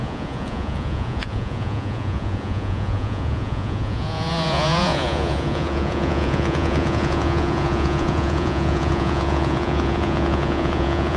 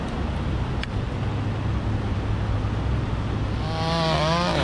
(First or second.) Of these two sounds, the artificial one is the first